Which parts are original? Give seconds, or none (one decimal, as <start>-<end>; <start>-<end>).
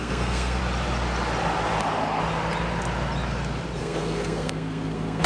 0.6-3.8